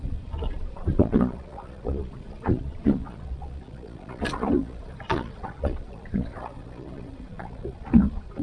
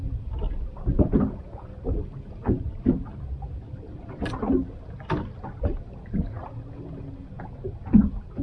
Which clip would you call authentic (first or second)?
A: second